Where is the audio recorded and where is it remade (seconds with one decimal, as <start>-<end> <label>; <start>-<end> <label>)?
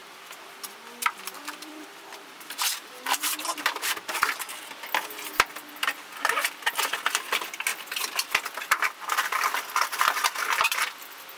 0.0-4.5 remade; 4.5-11.4 recorded